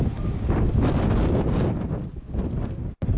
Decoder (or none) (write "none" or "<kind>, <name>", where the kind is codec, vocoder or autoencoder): none